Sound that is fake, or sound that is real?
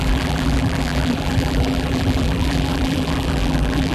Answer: fake